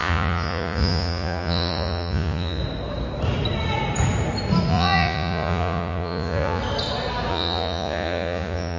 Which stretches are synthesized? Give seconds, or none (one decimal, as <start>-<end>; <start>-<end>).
0.0-2.6; 4.7-6.6; 7.3-8.8